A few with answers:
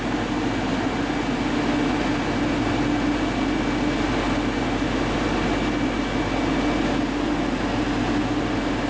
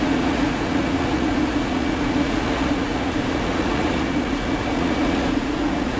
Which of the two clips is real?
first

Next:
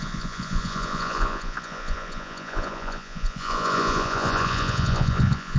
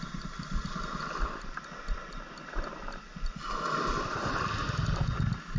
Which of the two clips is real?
second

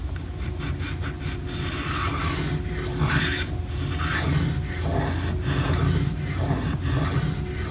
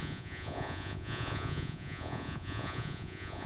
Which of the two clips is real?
first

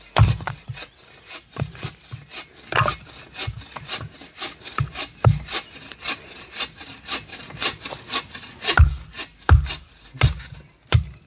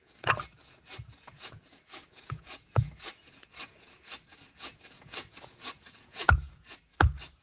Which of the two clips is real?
first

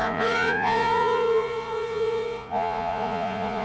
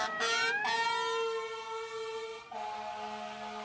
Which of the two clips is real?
second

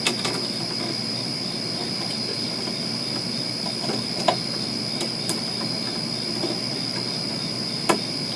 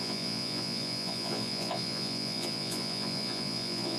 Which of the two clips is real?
first